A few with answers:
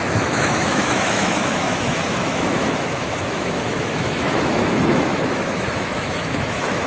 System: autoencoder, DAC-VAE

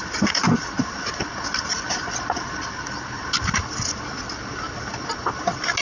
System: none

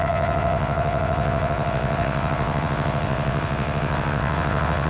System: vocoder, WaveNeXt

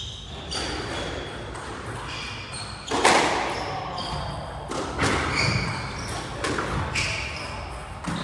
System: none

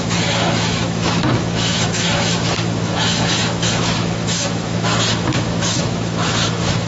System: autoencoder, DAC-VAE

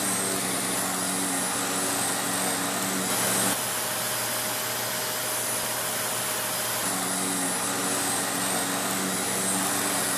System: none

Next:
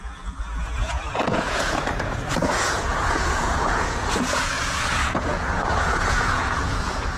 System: vocoder, Vocos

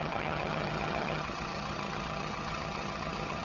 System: vocoder, HiFi-GAN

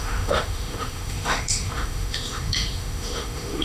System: autoencoder, DAC-VAE